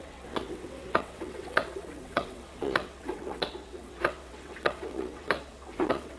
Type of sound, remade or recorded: remade